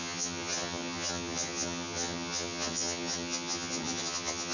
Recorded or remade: remade